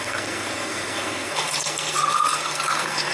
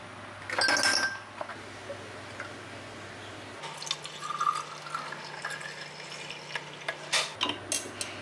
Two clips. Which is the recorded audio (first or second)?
second